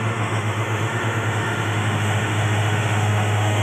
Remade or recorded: remade